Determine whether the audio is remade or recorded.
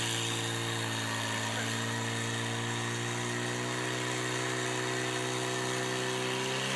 recorded